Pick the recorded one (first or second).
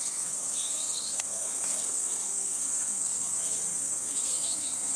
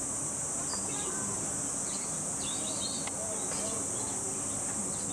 second